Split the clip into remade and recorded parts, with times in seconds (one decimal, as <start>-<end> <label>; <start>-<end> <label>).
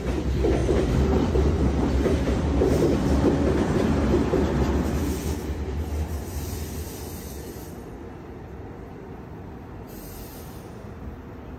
0.0-0.6 recorded; 0.6-1.9 remade; 1.9-11.6 recorded